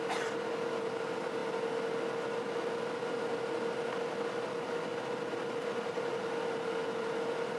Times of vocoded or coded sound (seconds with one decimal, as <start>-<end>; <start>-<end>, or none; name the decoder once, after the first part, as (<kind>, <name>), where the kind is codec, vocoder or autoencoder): 0.0-1.4 (vocoder, BigVGAN v2); 6.0-7.6